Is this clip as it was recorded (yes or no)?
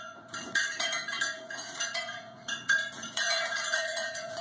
no